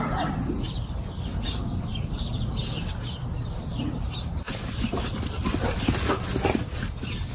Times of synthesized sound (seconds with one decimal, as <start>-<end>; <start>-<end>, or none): none